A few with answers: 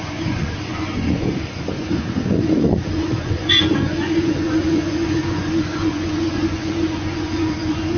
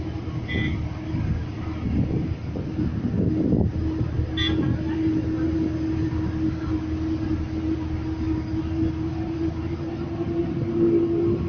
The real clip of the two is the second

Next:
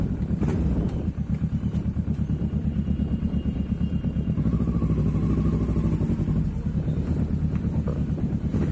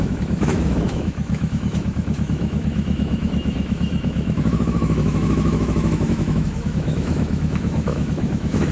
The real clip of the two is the first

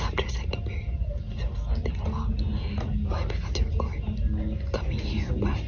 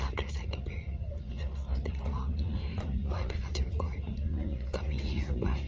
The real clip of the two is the first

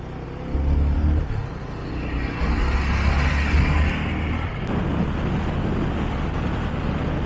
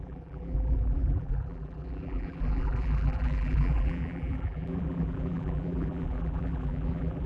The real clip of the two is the first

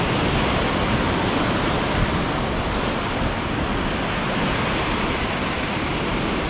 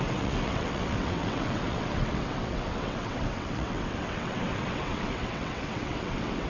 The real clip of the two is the first